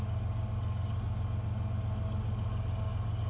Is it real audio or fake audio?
real